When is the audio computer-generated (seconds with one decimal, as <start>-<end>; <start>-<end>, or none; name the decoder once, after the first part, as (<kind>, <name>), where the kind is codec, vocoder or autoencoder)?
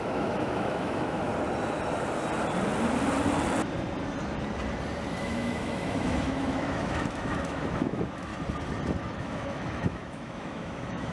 0.0-1.3 (autoencoder, DAC-VAE); 5.2-8.3; 9.0-11.1